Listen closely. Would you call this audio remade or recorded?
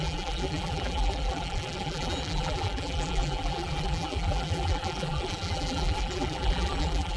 remade